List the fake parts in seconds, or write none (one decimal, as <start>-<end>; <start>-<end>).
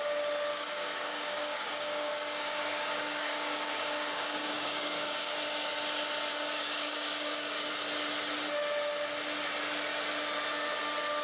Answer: 0.5-5.4; 6.3-7.7